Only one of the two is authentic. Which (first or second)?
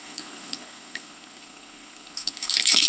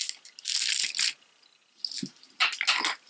second